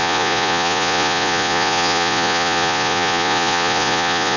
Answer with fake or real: fake